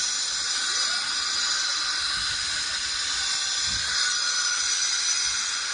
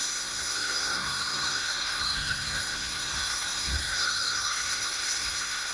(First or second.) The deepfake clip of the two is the second